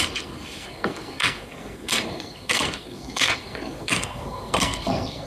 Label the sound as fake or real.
fake